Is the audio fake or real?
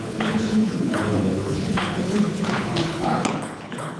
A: fake